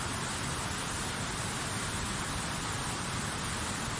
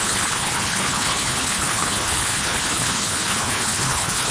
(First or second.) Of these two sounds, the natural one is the first